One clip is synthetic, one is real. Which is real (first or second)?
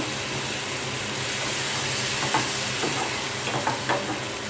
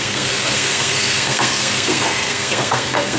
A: first